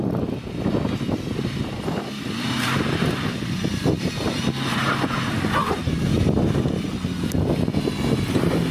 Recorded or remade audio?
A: recorded